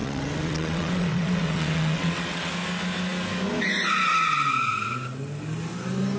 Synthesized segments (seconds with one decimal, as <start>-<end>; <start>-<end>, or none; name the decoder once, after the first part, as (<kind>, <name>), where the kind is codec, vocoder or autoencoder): 0.0-2.5 (vocoder, WaveNeXt)